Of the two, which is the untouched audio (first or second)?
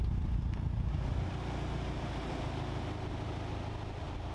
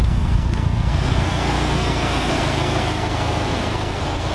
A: first